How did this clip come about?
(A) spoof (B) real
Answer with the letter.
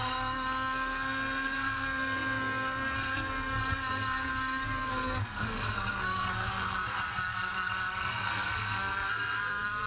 A